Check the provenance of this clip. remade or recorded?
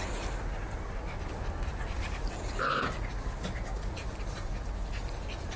recorded